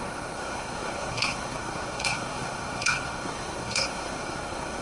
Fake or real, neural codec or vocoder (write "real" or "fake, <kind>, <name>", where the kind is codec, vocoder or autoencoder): fake, codec, SNAC